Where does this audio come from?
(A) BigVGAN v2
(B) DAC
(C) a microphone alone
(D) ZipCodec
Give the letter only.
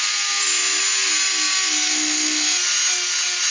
C